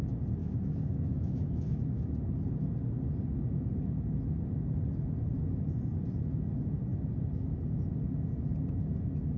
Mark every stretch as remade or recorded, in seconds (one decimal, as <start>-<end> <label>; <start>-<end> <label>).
0.0-0.4 recorded; 0.4-2.0 remade; 2.0-9.4 recorded